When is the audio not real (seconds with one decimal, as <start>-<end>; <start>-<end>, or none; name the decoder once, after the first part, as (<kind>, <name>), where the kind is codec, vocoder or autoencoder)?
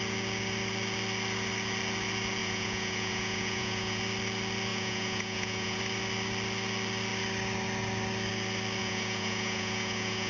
2.4-4.0 (vocoder, Vocos); 4.7-5.8; 8.8-10.3